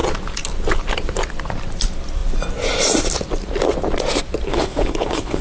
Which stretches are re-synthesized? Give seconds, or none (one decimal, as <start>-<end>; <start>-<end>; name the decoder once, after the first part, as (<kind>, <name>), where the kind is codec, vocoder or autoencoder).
4.5-5.4 (codec, HILCodec)